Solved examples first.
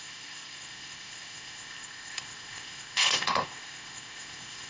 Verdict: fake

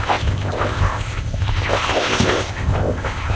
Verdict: fake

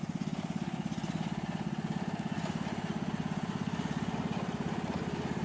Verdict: real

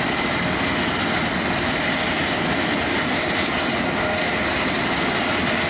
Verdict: real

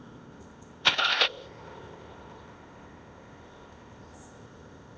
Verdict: fake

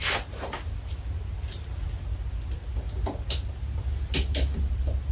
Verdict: real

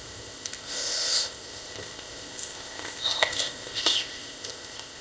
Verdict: fake